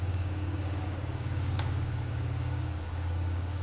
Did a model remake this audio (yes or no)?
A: yes